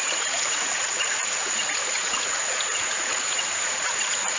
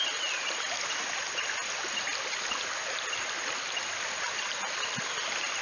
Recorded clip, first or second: second